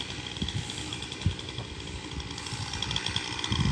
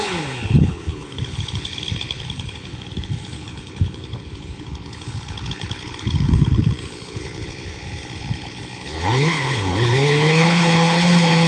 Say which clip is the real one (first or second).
first